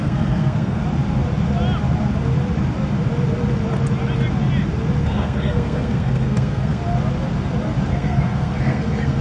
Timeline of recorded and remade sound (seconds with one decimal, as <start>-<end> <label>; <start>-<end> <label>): 0.0-0.8 remade; 0.8-5.0 recorded; 5.0-6.8 remade; 6.8-7.9 recorded; 7.9-9.2 remade